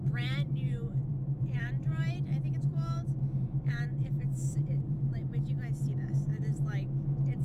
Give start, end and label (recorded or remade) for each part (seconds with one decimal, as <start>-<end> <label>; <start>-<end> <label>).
0.0-5.2 remade; 5.2-6.1 recorded; 6.1-6.7 remade; 6.7-7.4 recorded